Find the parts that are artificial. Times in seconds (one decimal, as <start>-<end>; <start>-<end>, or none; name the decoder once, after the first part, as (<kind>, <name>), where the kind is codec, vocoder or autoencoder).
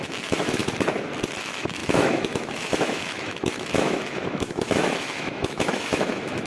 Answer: 0.0-0.6 (autoencoder, DAC-VAE); 1.4-6.5